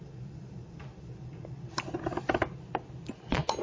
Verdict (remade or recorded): recorded